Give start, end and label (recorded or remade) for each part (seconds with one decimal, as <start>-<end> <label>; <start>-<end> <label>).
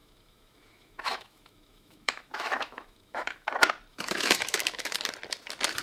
0.0-3.5 remade; 3.5-3.9 recorded; 3.9-5.0 remade; 5.0-5.8 recorded